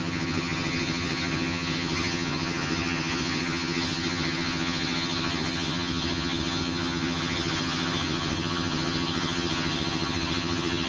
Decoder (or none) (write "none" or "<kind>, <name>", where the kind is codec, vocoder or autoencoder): vocoder, HiFi-GAN